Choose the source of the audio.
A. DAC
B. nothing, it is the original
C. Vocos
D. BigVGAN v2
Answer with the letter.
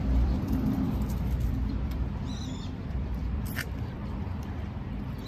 D